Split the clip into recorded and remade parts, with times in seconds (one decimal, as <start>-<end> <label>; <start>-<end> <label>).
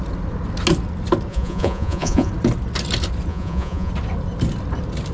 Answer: 0.0-1.3 recorded; 1.3-2.3 remade; 2.3-3.3 recorded; 3.3-3.9 remade; 3.9-5.1 recorded